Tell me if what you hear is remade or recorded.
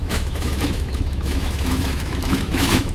remade